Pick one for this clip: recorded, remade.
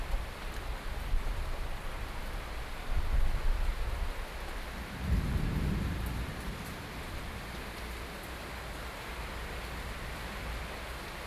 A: recorded